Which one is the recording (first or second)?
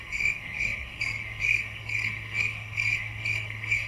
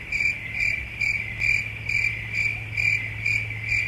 second